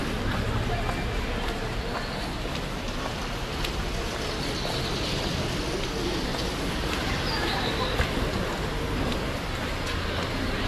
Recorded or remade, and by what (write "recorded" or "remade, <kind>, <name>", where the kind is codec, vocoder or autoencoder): recorded